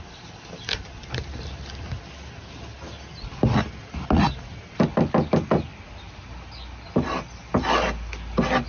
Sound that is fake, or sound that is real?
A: real